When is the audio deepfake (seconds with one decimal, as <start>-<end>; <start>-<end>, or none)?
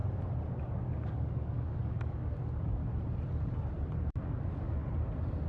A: 0.5-2.8; 4.2-4.8